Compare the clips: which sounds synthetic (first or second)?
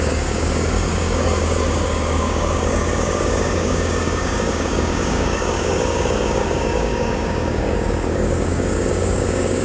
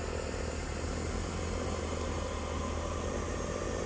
first